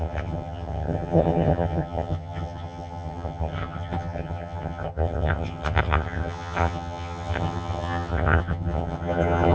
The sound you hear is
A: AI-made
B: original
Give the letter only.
A